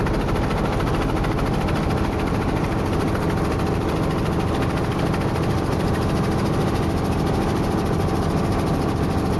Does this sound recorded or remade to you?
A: recorded